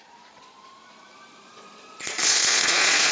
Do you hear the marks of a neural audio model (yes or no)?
yes